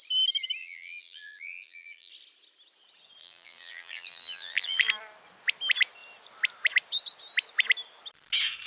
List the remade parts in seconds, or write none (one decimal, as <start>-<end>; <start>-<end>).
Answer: 0.6-2.1; 3.2-4.9

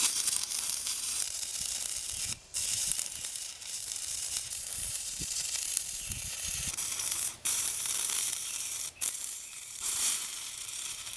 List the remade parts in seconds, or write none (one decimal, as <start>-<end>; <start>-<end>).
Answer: 0.0-1.5; 2.7-11.2

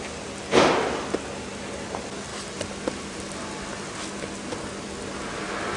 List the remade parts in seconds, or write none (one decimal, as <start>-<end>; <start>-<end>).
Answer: 2.3-3.6

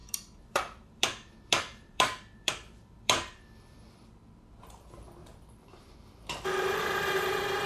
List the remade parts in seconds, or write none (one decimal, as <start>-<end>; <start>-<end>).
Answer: 0.0-3.8; 5.2-7.1

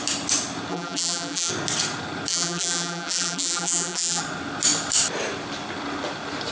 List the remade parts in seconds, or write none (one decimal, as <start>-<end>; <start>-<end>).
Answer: 0.7-1.5; 2.3-4.2

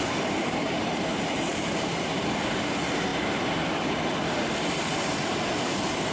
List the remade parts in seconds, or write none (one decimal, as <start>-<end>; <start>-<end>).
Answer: 1.5-2.2

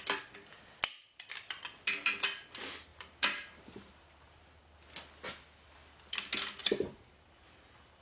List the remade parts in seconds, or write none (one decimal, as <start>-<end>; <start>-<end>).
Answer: 2.9-4.6; 6.6-7.1

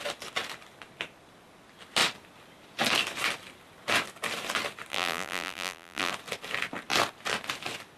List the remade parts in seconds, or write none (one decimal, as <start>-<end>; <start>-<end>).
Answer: 4.9-6.1